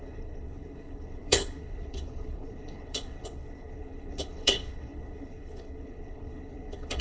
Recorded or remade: remade